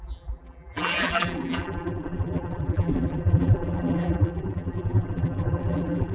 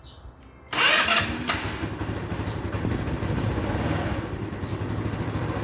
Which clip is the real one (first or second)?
second